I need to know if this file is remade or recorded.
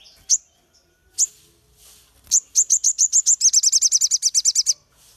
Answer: recorded